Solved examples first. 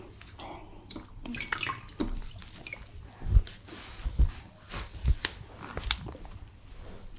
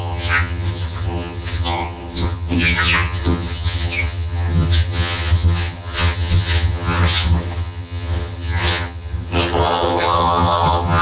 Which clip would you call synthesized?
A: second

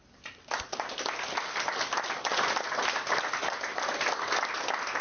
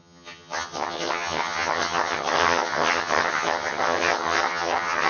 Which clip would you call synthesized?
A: second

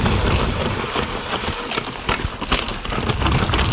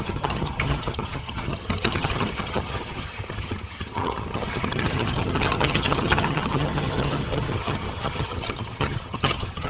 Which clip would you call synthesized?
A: second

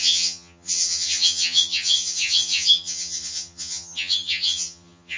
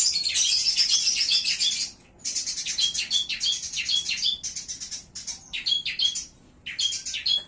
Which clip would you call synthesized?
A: first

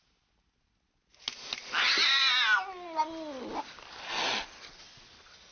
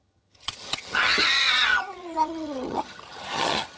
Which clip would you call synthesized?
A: second